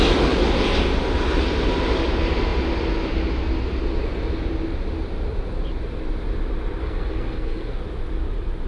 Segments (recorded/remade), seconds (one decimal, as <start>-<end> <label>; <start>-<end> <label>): 0.0-6.8 recorded; 6.8-7.8 remade; 7.8-8.7 recorded